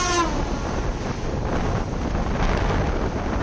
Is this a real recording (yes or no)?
yes